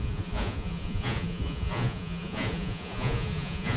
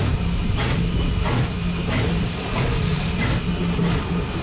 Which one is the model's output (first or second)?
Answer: first